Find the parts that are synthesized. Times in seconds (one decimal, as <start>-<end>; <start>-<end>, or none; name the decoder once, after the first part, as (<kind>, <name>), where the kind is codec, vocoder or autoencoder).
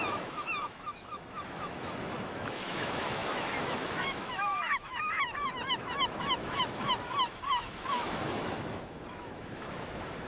0.0-10.3 (autoencoder, DAC-VAE)